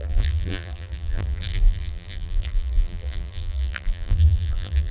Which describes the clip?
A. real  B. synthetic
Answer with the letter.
B